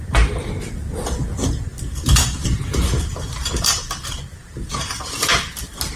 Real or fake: fake